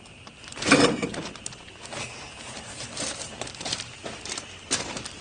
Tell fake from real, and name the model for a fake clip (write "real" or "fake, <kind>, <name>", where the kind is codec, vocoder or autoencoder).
fake, vocoder, BigVGAN v2